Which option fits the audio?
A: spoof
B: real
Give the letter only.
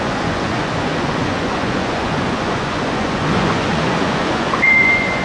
A